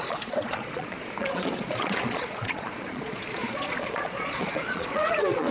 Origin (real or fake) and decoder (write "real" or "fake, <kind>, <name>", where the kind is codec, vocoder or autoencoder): fake, vocoder, Vocos